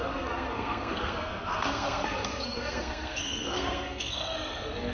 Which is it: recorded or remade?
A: remade